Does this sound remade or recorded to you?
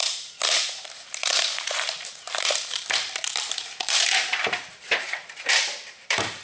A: remade